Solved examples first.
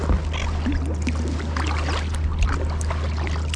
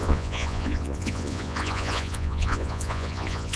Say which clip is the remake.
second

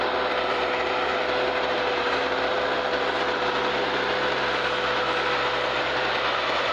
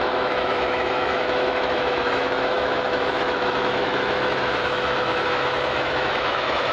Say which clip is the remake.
second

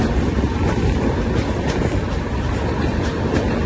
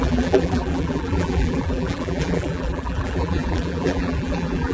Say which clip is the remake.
second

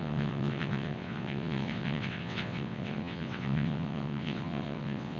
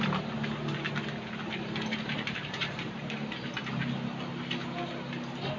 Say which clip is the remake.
first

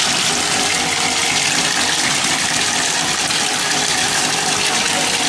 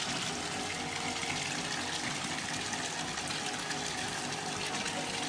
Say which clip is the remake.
first